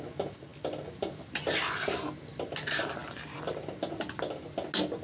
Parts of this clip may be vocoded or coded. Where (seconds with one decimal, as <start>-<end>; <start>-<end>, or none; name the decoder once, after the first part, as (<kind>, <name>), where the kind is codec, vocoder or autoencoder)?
none